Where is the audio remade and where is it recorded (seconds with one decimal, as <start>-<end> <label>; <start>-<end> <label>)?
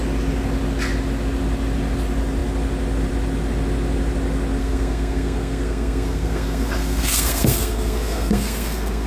0.0-4.6 recorded; 4.6-9.1 remade